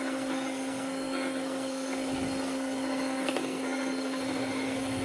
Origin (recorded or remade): remade